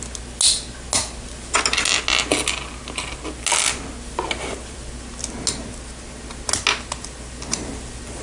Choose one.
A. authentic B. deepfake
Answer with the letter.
A